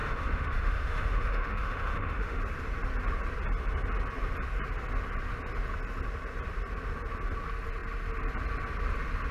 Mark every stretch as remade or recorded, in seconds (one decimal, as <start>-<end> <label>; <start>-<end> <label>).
0.0-2.4 remade; 2.4-9.3 recorded